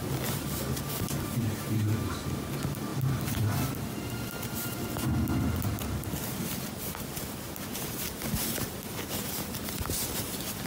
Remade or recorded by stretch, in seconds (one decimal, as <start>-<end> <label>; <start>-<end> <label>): 0.0-10.7 recorded